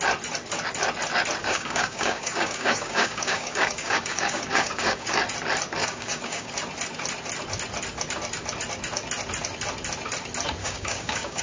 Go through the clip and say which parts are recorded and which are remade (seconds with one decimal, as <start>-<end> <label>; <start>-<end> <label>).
0.0-1.4 recorded; 1.4-5.1 remade; 5.1-5.8 recorded; 5.8-6.5 remade; 6.5-10.6 recorded; 10.6-11.4 remade